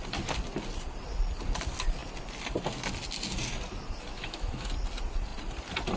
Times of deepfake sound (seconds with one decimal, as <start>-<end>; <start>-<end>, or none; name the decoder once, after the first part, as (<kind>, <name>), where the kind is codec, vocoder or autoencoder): 4.1-4.7 (autoencoder, DAC-VAE)